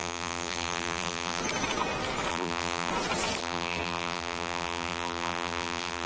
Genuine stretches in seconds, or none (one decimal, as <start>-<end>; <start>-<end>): 1.4-2.3; 2.9-3.4